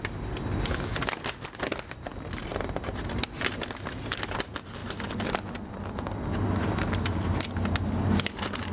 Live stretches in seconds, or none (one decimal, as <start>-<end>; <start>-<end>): 0.0-8.7